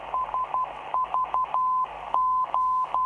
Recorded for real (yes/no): yes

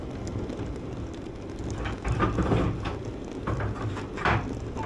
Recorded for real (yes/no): yes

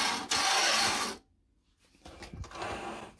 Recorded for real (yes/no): yes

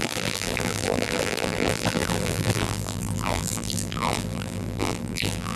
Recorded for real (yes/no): no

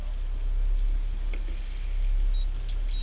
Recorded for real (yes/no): yes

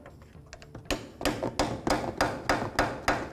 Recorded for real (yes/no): yes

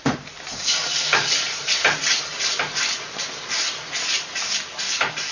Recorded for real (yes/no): no